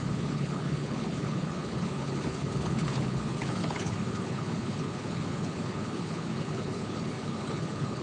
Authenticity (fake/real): fake